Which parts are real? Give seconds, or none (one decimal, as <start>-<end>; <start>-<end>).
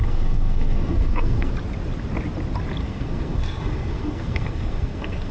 1.5-2.8